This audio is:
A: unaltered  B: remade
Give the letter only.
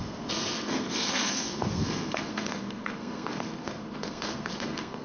B